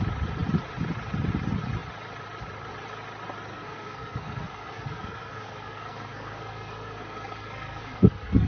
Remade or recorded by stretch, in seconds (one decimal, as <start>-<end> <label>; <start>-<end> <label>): 0.0-3.5 recorded; 3.5-8.5 remade

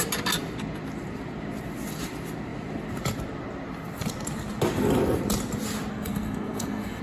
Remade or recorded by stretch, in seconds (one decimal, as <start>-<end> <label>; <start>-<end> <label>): 0.0-5.9 recorded; 5.9-7.0 remade